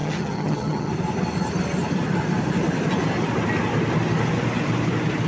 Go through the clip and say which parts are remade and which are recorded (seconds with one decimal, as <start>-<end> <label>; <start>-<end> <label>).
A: 0.0-0.9 remade; 0.9-5.3 recorded